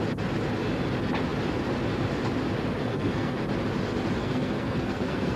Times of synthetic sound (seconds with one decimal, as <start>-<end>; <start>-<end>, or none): 2.9-3.4; 4.2-5.4